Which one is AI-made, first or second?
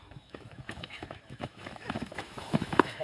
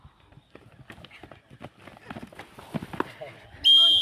first